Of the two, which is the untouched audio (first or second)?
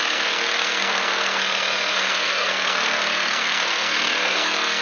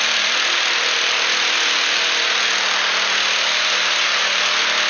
second